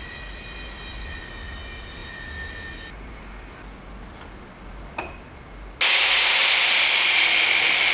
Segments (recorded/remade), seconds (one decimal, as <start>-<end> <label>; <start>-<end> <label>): 0.0-1.2 remade; 1.2-2.0 recorded; 2.0-3.8 remade; 3.8-6.4 recorded; 6.4-7.9 remade